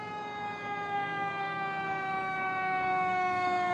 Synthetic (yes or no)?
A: yes